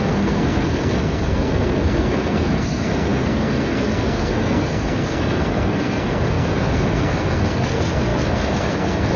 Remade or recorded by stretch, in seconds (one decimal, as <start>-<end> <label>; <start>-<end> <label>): 0.0-9.2 remade